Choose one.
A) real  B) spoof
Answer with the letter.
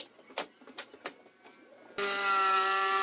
A